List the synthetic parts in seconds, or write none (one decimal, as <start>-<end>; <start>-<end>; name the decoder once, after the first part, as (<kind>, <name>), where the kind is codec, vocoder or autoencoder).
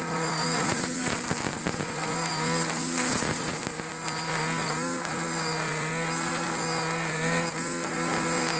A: 0.0-1.0 (vocoder, Vocos); 1.8-2.3; 3.1-3.6